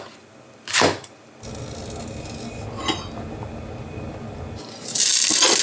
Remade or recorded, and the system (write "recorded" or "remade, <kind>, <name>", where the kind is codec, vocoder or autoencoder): recorded